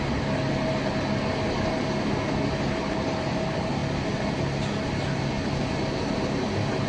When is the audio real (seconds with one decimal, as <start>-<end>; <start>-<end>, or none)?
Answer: 0.0-6.9